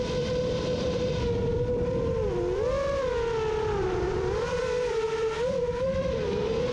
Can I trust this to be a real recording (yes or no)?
no